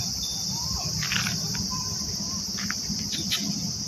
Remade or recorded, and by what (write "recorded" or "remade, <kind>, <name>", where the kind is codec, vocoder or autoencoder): recorded